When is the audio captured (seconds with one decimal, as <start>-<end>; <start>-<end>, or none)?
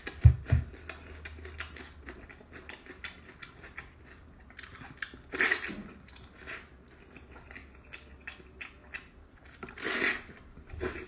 0.0-11.1